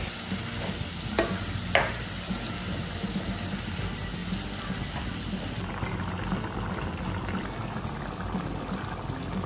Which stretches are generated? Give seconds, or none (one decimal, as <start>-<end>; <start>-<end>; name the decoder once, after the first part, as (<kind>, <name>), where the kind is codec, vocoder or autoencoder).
none